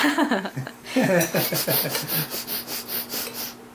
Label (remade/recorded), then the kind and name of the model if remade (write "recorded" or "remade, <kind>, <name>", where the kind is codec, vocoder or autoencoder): recorded